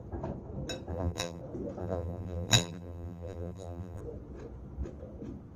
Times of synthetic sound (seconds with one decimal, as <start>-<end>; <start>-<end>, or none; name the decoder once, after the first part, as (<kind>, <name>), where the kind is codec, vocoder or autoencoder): 0.9-1.4 (vocoder, BigVGAN v2); 1.8-4.0